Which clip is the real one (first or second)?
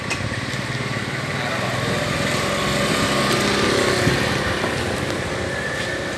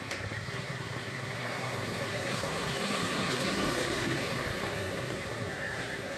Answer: first